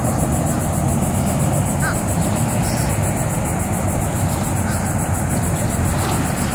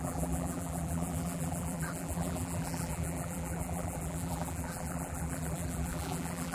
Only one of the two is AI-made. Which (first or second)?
second